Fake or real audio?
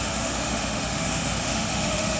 fake